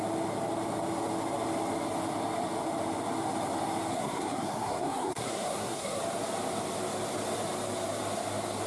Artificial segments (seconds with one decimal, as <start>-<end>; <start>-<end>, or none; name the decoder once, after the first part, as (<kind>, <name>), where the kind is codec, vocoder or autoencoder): 3.9-6.0 (codec, SNAC)